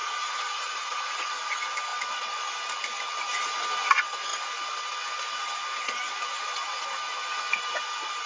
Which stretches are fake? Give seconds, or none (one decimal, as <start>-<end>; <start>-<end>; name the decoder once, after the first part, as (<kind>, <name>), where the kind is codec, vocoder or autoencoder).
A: 0.0-1.5 (vocoder, Vocos)